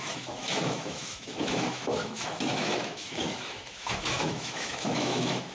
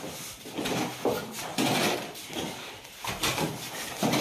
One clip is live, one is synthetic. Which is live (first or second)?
second